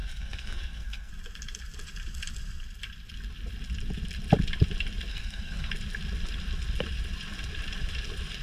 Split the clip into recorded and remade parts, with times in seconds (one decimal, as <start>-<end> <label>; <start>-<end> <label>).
0.0-1.1 remade; 1.1-5.1 recorded; 5.1-5.7 remade; 5.7-8.4 recorded